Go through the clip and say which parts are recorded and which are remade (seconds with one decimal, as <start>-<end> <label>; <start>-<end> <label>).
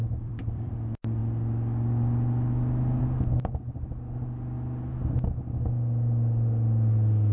0.0-0.7 remade; 0.7-7.3 recorded